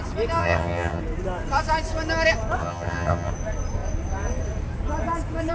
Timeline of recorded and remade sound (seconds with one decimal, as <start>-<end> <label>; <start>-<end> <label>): 0.0-0.4 recorded; 0.4-1.0 remade; 1.0-2.6 recorded; 2.6-3.3 remade; 3.3-5.5 recorded